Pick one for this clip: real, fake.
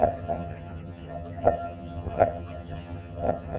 fake